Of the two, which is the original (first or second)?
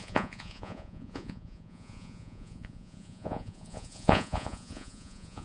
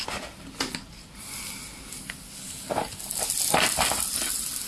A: second